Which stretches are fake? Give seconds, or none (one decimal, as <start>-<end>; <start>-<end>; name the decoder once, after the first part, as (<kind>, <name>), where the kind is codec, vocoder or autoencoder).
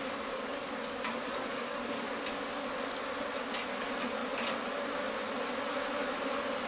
1.5-2.1 (codec, DAC)